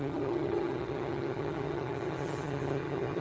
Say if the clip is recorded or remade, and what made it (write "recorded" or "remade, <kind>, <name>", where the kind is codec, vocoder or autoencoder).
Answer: remade, vocoder, HiFi-GAN